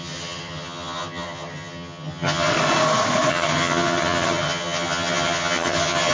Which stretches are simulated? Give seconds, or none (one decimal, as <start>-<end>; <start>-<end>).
0.0-2.5; 3.3-6.1